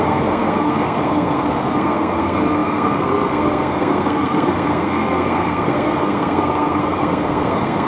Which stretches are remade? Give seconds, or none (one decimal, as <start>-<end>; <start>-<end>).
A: 0.0-7.9